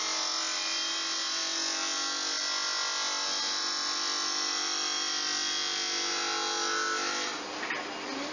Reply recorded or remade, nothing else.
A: recorded